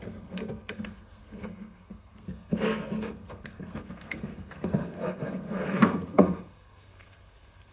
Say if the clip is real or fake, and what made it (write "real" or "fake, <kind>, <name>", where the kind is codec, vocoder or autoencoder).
fake, codec, SNAC